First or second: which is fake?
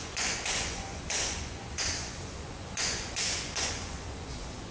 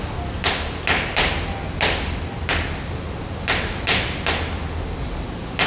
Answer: first